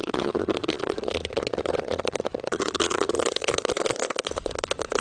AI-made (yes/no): yes